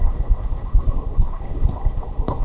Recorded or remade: remade